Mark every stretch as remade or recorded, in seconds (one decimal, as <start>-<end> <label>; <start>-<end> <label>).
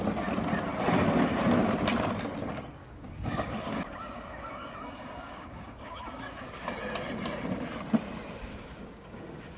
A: 0.0-2.8 recorded; 2.8-6.7 remade; 6.7-8.5 recorded; 8.5-9.6 remade